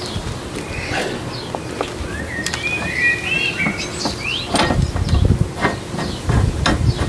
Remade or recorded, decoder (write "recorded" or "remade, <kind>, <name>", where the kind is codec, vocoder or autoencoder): recorded